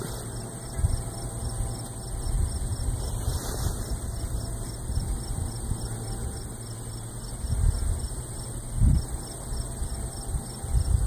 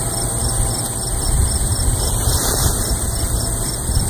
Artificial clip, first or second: second